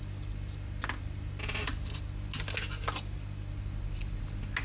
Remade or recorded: recorded